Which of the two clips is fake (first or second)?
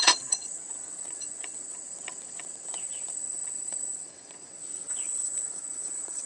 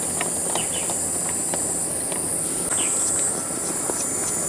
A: first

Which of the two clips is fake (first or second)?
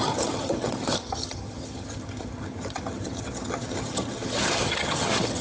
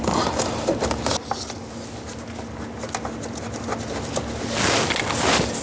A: first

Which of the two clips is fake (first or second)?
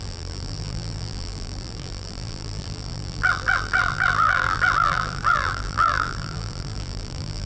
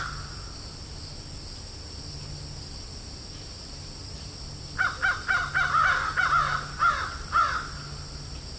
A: first